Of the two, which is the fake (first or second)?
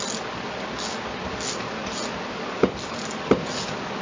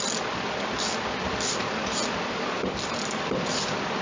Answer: second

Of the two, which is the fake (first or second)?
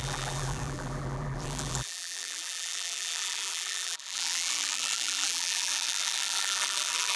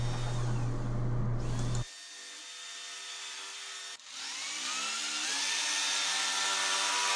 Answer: first